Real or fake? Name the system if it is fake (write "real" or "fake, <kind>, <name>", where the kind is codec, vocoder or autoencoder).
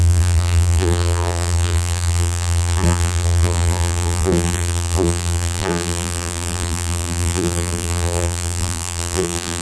fake, vocoder, BigVGAN v2